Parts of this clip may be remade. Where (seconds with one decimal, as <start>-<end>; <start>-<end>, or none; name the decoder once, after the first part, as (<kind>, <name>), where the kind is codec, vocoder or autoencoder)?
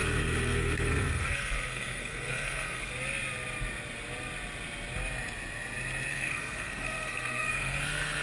0.0-2.9 (codec, SNAC); 6.1-8.2